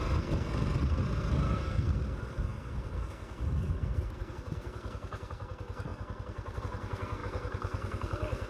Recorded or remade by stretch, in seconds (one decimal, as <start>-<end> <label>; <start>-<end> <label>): 0.0-8.5 remade